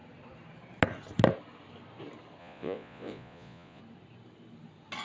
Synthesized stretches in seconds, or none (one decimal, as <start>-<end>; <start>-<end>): 2.4-3.8